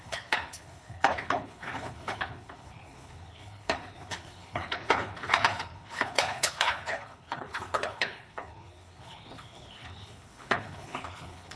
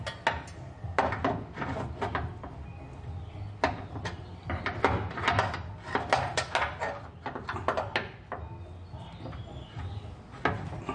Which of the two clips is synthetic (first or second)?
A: first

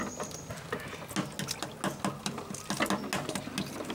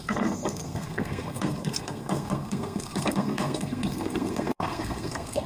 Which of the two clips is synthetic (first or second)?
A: second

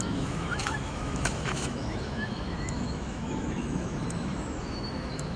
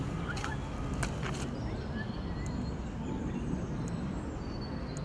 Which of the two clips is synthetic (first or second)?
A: first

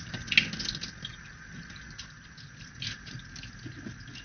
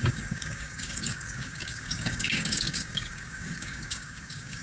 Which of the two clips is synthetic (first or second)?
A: second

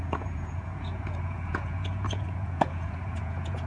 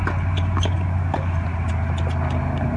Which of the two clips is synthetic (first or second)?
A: first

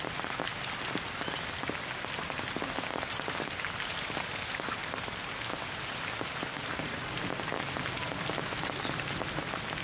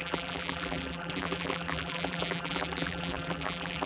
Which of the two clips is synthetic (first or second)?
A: second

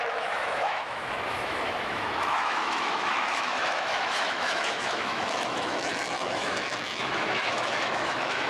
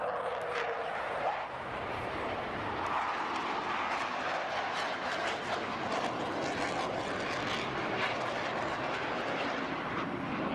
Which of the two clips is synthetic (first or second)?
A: first